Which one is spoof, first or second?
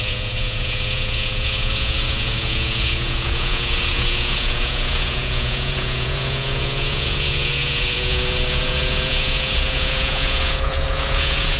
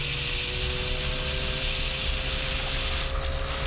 first